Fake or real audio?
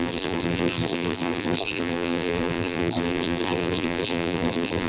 fake